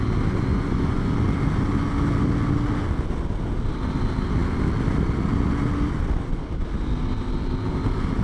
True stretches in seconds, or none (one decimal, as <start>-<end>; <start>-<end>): 0.0-0.5; 1.1-8.2